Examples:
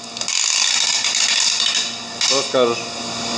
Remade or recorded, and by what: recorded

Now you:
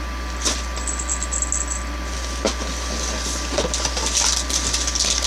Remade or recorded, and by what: recorded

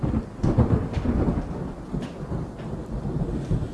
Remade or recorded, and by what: recorded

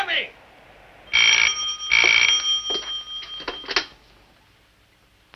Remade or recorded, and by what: recorded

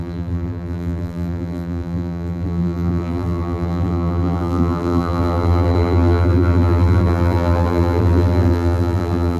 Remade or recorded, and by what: remade, vocoder, BigVGAN v2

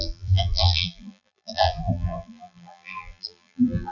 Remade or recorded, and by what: remade, vocoder, BigVGAN v2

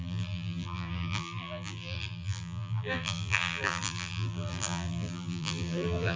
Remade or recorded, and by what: remade, vocoder, BigVGAN v2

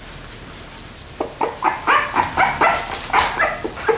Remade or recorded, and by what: recorded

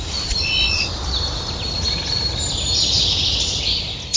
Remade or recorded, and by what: recorded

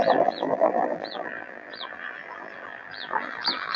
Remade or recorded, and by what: remade, vocoder, BigVGAN v2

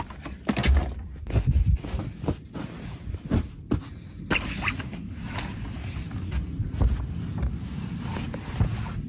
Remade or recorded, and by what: recorded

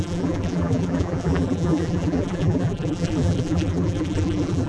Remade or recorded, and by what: remade, vocoder, BigVGAN v2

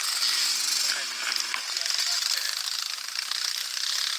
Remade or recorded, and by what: recorded